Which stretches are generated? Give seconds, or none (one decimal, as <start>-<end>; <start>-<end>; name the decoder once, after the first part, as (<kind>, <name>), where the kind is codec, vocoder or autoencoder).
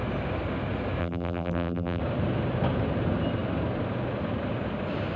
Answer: 1.0-2.0 (vocoder, BigVGAN v2)